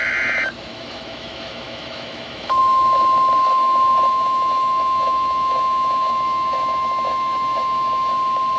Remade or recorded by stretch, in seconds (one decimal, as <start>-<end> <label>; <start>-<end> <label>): 0.0-0.7 recorded; 0.7-2.6 remade; 2.6-3.6 recorded; 3.6-8.1 remade; 8.1-8.6 recorded